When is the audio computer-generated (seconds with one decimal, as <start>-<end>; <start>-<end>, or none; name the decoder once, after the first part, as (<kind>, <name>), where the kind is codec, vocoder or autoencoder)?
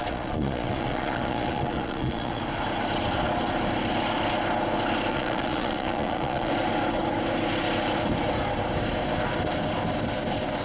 0.0-2.4 (vocoder, Vocos); 5.1-6.5